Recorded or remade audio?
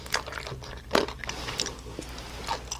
recorded